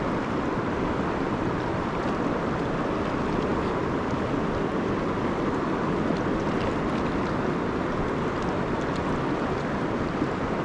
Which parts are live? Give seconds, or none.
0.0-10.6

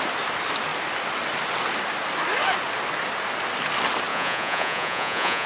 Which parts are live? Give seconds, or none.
0.0-4.1

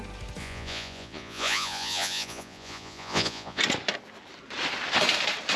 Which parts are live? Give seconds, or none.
0.0-0.4; 3.6-5.6

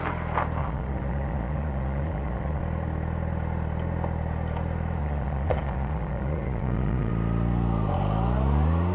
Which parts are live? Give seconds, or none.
0.0-0.6; 2.6-5.0; 7.1-8.9

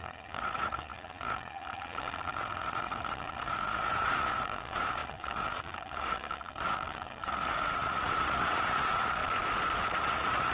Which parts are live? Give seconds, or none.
9.2-9.9